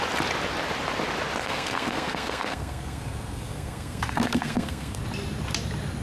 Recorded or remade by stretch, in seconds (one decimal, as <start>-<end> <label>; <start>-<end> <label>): 0.0-1.4 recorded; 1.4-5.0 remade; 5.0-6.0 recorded